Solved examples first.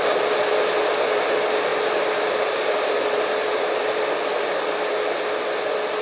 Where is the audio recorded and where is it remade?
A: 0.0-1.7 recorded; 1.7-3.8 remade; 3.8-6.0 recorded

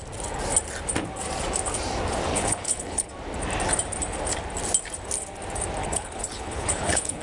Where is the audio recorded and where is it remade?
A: 0.0-2.3 recorded; 2.3-3.1 remade; 3.1-5.8 recorded; 5.8-7.2 remade

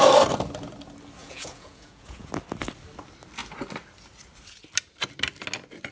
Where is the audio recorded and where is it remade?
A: 0.0-1.2 recorded; 1.2-2.3 remade; 2.3-5.9 recorded

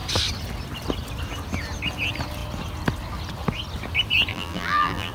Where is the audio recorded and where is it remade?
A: 0.0-4.3 recorded; 4.3-5.1 remade

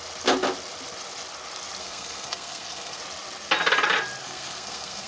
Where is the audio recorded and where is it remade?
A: 0.0-1.8 recorded; 1.8-3.0 remade; 3.0-4.2 recorded; 4.2-5.1 remade

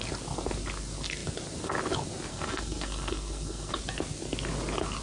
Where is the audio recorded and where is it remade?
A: 0.0-2.3 recorded; 2.3-3.7 remade; 3.7-5.0 recorded

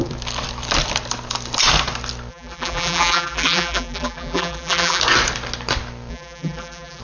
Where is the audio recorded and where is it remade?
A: 0.0-2.3 recorded; 2.3-5.0 remade; 5.0-6.1 recorded; 6.1-7.0 remade

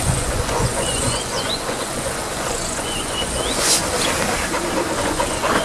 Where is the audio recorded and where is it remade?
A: 0.0-3.8 remade; 3.8-5.0 recorded; 5.0-5.6 remade